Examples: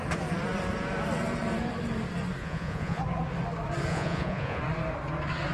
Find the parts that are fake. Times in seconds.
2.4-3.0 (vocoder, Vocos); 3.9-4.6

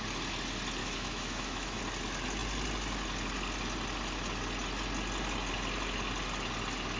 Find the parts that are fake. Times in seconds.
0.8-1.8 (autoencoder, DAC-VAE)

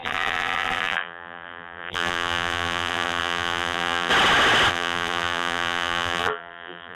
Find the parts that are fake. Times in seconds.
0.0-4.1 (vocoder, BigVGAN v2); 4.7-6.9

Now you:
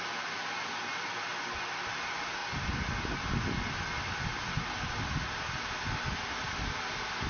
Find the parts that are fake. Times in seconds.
none